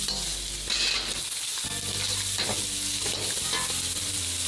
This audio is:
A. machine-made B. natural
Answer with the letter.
B